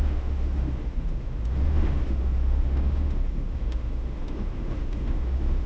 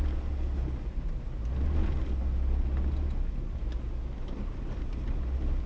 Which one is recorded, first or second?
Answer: second